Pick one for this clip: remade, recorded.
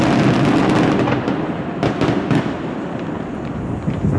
recorded